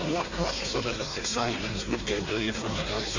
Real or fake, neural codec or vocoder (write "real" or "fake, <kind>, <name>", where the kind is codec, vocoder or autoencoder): fake, codec, SNAC